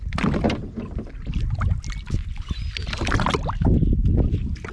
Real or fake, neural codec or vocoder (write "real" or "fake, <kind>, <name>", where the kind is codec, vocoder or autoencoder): real